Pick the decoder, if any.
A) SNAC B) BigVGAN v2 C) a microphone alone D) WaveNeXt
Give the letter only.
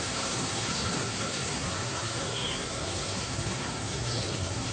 A